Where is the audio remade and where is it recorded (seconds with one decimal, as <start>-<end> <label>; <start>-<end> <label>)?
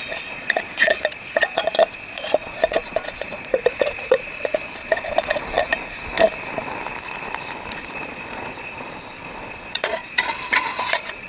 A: 0.0-5.7 remade; 5.7-7.7 recorded; 7.7-11.3 remade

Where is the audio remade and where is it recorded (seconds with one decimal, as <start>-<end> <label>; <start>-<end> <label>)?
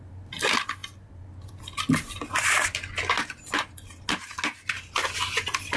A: 0.0-5.8 recorded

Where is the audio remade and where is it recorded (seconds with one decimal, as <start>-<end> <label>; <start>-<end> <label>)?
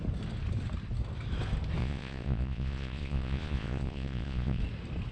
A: 0.0-1.8 recorded; 1.8-4.6 remade; 4.6-5.1 recorded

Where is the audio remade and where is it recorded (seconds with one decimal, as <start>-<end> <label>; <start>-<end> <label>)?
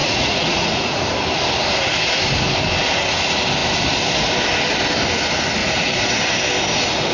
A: 0.0-1.0 remade; 1.0-5.6 recorded; 5.6-6.1 remade; 6.1-7.1 recorded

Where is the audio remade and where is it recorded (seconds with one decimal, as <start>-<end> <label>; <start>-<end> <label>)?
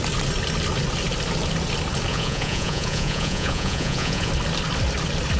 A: 0.0-2.1 recorded; 2.1-4.3 remade; 4.3-5.4 recorded